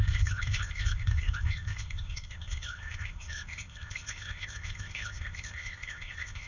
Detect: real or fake fake